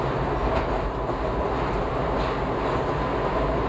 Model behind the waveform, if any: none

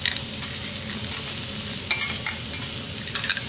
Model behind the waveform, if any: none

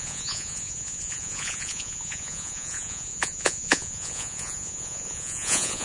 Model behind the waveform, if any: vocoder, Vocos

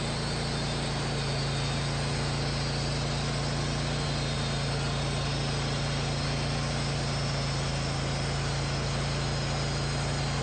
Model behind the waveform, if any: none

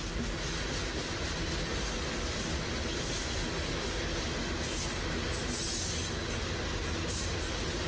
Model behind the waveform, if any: none